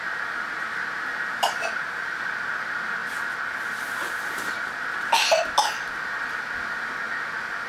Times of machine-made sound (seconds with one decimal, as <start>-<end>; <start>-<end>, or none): none